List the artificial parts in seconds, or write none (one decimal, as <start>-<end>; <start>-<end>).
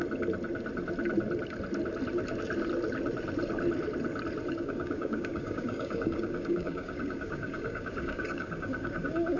4.5-9.4